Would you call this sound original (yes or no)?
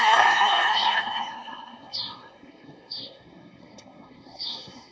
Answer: no